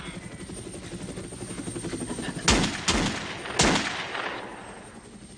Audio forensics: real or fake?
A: real